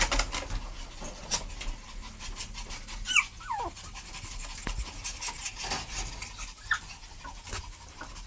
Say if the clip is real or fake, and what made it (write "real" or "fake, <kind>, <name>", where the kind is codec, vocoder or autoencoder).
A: real